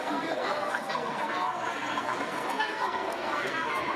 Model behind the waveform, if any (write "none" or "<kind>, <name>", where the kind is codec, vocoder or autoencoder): codec, SNAC